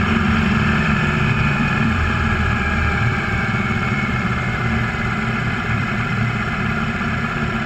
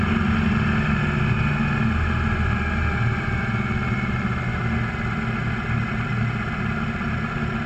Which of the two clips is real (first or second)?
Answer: second